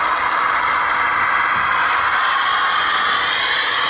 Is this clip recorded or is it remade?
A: recorded